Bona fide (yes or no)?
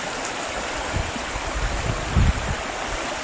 yes